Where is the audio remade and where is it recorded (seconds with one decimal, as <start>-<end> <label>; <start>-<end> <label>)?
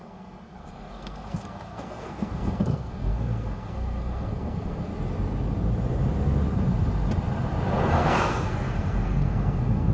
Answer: 0.0-4.9 remade; 4.9-7.9 recorded; 7.9-9.9 remade